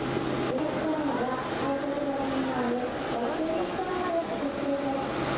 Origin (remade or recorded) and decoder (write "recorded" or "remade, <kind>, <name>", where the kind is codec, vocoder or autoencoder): recorded